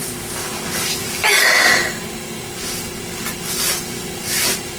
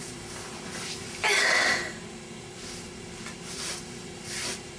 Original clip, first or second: first